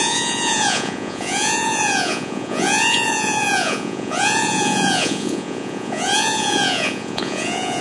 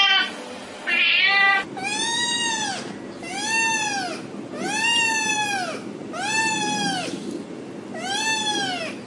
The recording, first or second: second